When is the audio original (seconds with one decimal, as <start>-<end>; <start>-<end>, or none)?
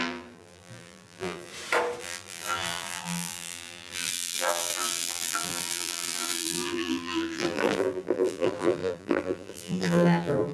1.5-2.0